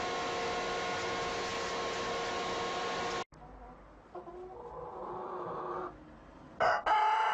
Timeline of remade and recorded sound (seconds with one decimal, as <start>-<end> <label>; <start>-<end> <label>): 0.0-7.3 recorded